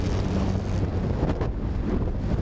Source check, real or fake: real